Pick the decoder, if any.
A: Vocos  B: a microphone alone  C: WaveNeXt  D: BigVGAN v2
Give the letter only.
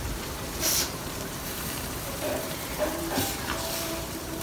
D